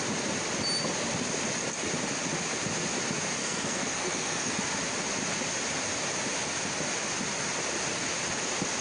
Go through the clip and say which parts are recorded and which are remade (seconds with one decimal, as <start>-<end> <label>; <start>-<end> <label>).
0.0-3.4 recorded; 3.4-4.6 remade; 4.6-8.8 recorded